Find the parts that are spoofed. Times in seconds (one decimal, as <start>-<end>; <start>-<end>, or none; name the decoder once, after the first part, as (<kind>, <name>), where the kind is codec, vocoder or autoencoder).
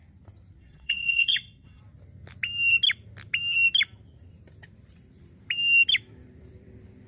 0.6-1.8 (vocoder, WaveNeXt)